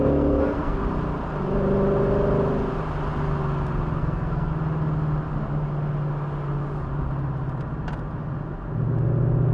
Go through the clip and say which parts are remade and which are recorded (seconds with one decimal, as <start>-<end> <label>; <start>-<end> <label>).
0.0-0.8 remade; 0.8-4.0 recorded; 4.0-4.5 remade; 4.5-9.5 recorded